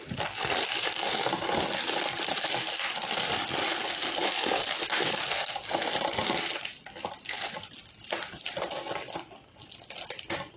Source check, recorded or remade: recorded